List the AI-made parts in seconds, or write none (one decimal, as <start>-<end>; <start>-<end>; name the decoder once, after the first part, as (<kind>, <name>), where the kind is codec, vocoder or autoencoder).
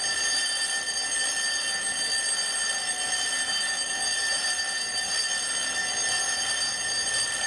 none